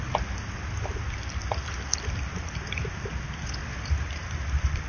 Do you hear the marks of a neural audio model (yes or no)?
no